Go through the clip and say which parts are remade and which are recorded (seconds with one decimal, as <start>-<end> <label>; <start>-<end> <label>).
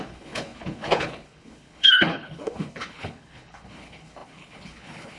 0.0-5.2 remade